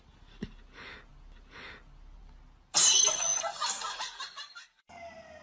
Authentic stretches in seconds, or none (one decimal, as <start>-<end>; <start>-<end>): 0.0-5.4